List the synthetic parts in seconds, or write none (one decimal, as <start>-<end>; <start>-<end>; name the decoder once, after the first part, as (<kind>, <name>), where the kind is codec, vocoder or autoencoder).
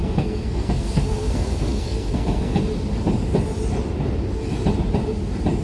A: 0.0-2.6 (codec, SNAC)